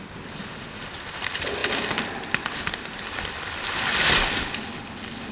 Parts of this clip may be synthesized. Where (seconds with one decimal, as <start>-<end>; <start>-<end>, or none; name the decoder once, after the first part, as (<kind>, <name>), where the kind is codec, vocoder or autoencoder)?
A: none